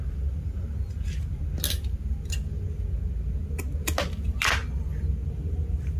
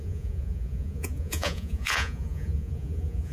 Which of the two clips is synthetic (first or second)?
second